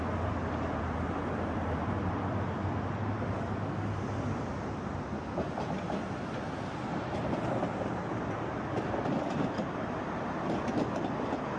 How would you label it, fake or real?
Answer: fake